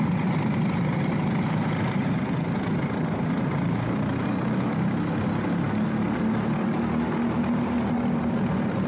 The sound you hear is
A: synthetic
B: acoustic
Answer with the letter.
B